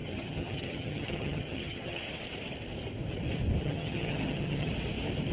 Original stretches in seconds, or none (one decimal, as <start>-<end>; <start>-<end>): 2.0-3.6; 4.7-5.3